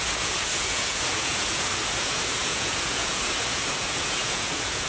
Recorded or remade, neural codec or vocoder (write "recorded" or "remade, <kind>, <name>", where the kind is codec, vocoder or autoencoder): remade, vocoder, Vocos